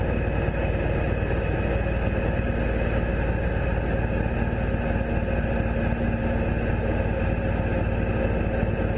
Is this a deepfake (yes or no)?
no